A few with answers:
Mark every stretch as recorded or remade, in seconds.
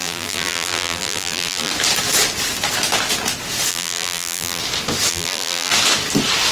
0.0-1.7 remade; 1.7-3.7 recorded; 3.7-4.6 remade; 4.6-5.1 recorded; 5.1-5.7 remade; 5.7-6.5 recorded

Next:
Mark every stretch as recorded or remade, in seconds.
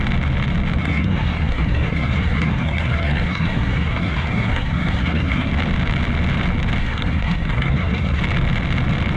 0.0-0.8 recorded; 0.8-5.5 remade; 5.5-6.8 recorded; 6.8-8.2 remade; 8.2-9.2 recorded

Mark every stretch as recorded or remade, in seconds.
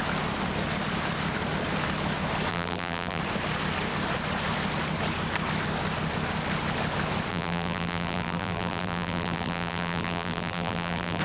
0.0-2.5 recorded; 2.5-3.2 remade; 3.2-7.3 recorded; 7.3-11.2 remade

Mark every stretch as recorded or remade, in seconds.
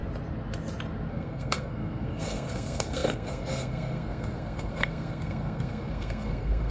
0.0-1.1 recorded; 1.1-6.7 remade